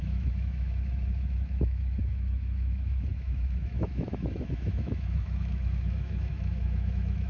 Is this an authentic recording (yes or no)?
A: no